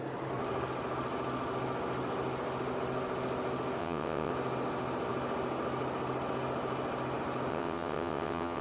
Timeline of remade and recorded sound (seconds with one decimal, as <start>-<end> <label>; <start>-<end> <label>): 0.0-3.8 recorded; 3.8-4.3 remade; 4.3-7.5 recorded; 7.5-8.6 remade